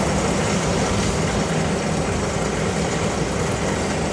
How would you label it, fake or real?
real